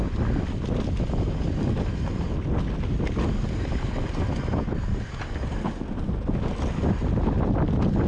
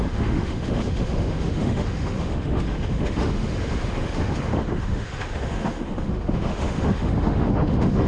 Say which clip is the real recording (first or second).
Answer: first